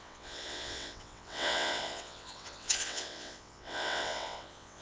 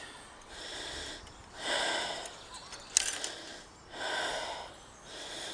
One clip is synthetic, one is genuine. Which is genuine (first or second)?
second